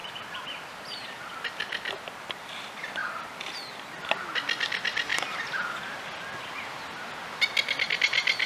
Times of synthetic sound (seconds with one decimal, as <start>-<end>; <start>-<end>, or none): 0.0-1.4; 5.1-5.8